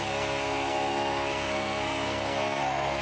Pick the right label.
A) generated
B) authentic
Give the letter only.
A